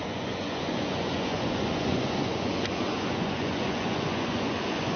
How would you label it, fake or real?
fake